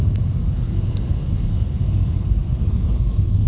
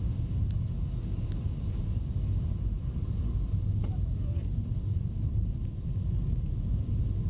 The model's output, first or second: first